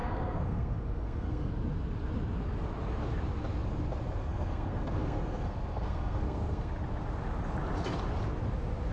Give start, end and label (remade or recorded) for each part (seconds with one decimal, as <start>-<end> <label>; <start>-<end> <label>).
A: 0.0-1.5 remade; 1.5-4.2 recorded; 4.2-6.7 remade; 6.7-8.9 recorded